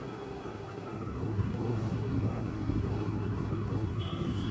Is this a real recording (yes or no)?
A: no